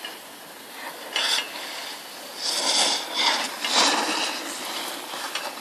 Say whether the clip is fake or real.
real